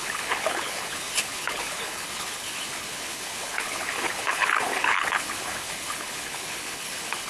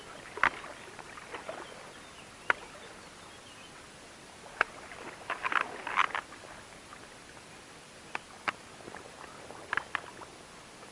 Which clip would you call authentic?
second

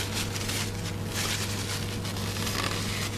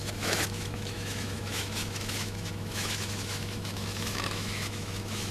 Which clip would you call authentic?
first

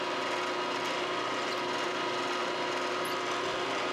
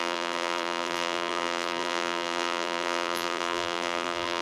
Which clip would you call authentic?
first